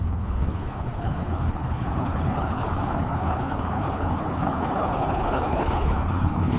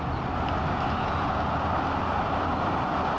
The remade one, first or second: first